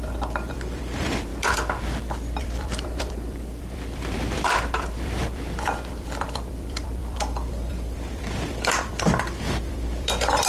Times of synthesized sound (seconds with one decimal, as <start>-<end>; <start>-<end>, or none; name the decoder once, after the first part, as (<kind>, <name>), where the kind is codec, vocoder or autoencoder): 0.0-1.3 (vocoder, BigVGAN v2); 2.4-10.5

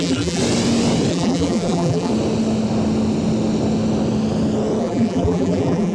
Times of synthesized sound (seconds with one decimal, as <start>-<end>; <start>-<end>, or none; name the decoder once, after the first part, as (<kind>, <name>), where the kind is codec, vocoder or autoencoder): 0.0-0.4 (vocoder, BigVGAN v2); 1.1-2.1; 4.8-5.9